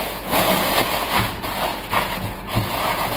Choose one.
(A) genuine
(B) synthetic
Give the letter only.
B